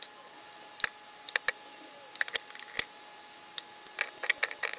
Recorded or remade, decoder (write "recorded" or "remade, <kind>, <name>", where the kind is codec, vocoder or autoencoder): recorded